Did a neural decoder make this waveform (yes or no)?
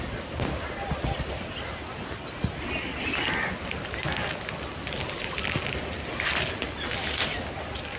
no